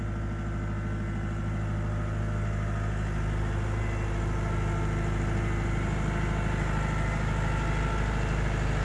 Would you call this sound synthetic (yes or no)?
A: no